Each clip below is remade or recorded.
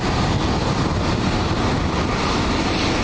recorded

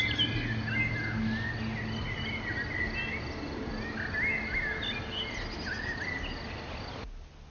recorded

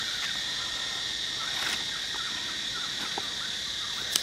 recorded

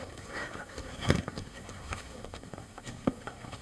remade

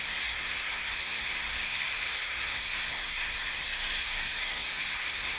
remade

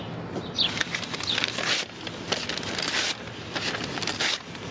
recorded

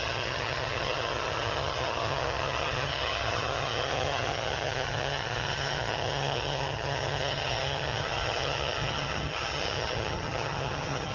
remade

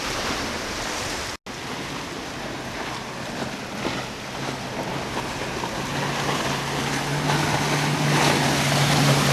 recorded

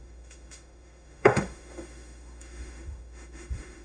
remade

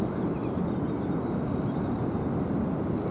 recorded